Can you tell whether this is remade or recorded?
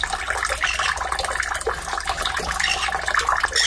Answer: recorded